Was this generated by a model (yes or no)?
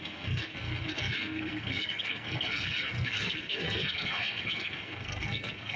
yes